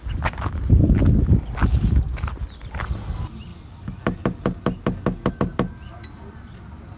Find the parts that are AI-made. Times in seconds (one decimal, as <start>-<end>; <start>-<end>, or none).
0.8-1.3